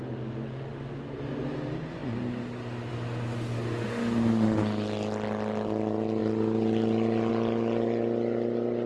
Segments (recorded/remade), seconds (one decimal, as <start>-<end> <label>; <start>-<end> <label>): 0.0-8.9 recorded